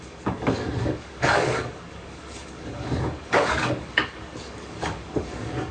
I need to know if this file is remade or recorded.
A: remade